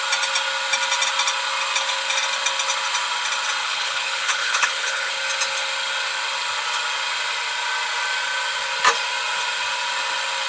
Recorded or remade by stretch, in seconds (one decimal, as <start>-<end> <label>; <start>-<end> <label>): 0.0-3.6 recorded; 3.6-5.1 remade; 5.1-10.5 recorded